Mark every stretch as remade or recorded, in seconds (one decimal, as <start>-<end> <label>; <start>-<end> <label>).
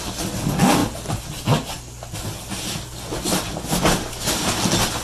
0.0-5.0 recorded